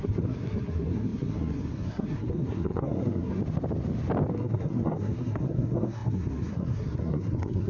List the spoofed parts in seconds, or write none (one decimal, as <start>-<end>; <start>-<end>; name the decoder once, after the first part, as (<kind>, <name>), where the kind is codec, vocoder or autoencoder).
0.0-3.4 (codec, SNAC); 4.3-7.7